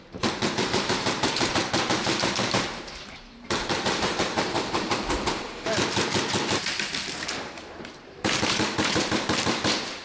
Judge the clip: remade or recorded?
remade